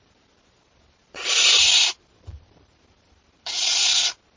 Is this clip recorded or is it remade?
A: remade